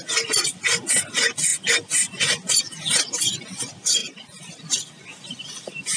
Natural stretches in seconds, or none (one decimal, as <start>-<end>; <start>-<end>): 0.0-4.0; 4.6-6.0